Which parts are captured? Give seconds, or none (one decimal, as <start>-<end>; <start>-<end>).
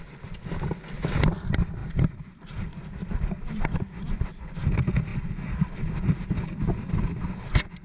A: 0.0-7.8